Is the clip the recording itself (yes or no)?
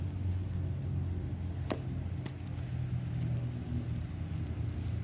yes